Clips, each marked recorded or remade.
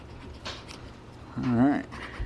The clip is remade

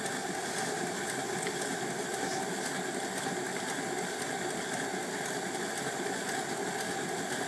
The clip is recorded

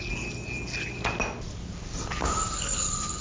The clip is recorded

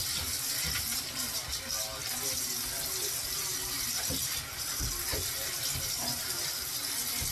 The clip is recorded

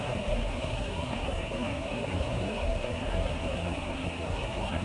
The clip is remade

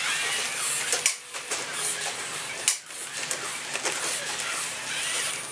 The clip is recorded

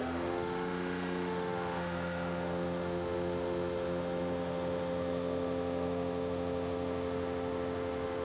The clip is remade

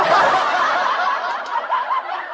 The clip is recorded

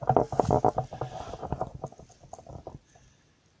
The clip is recorded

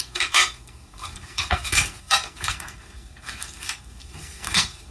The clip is remade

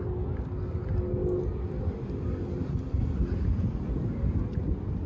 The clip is recorded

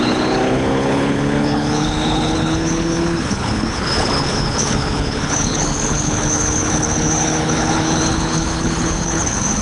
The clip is remade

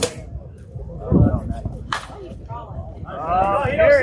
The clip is remade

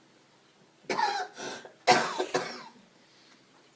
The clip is recorded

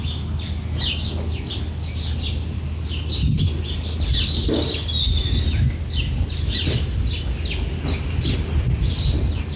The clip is recorded